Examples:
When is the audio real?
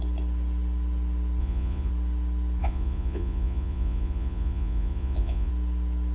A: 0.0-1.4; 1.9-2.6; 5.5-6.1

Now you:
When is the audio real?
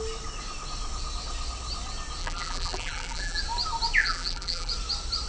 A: 0.0-2.2; 3.4-4.0; 4.7-5.3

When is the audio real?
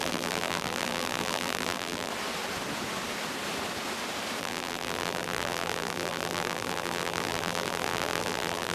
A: 2.1-4.4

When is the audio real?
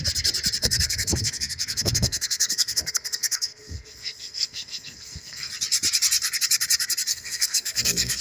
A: 0.0-0.6; 5.5-7.1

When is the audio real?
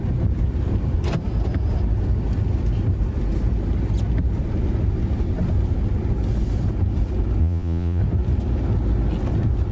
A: 0.0-7.4; 8.0-9.7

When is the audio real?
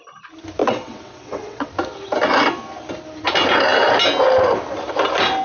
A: 0.0-0.6; 1.7-5.4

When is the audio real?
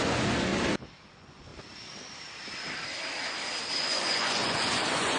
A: 0.5-1.1; 1.5-3.8